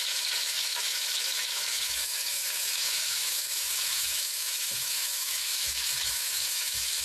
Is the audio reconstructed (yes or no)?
yes